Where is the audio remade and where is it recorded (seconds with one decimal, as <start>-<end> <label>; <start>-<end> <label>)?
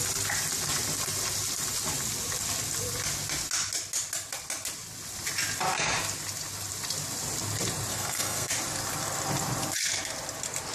0.0-7.9 recorded; 7.9-8.5 remade; 8.5-10.7 recorded